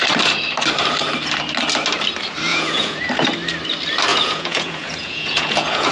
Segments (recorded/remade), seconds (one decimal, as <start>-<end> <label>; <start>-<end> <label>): 0.0-2.5 recorded; 2.5-3.1 remade; 3.1-4.1 recorded; 4.1-5.9 remade